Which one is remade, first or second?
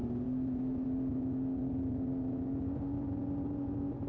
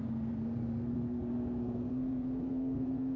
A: second